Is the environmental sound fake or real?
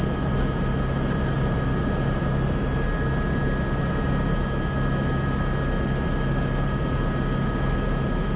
real